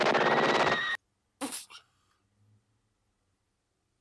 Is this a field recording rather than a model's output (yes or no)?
yes